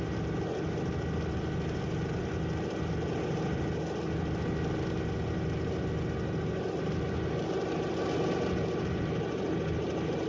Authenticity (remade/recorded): recorded